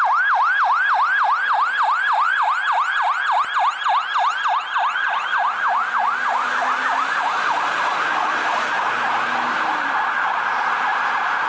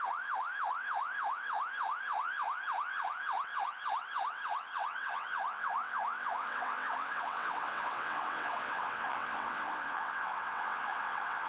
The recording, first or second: first